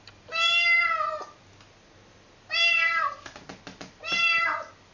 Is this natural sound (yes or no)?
yes